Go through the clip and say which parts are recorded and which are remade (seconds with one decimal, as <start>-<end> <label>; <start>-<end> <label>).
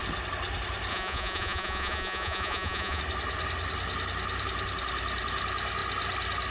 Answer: 0.0-0.9 recorded; 0.9-3.0 remade; 3.0-6.5 recorded